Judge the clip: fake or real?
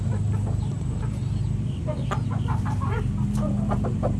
fake